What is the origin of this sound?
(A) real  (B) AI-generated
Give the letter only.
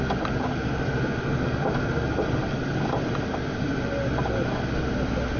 A